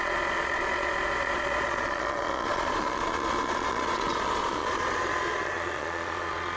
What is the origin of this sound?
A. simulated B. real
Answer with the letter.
A